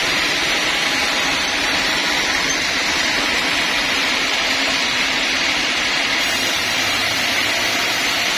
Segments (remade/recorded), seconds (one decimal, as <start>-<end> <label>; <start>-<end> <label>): 0.0-8.4 remade